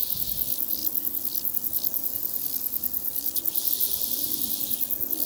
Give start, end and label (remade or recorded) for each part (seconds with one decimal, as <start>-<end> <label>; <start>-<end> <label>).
0.0-5.3 recorded

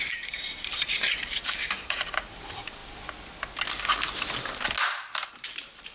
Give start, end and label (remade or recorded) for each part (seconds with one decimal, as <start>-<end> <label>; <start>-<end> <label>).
0.0-2.8 remade; 2.8-5.3 recorded; 5.3-5.9 remade